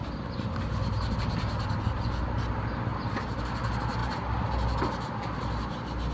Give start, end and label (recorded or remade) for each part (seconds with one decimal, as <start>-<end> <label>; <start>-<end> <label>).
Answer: 0.0-6.1 recorded